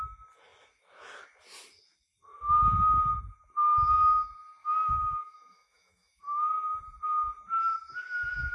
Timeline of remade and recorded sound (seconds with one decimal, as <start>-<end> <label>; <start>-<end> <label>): 0.0-4.6 recorded; 4.6-6.2 remade; 6.2-8.5 recorded